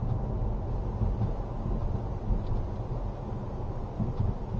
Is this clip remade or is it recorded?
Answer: recorded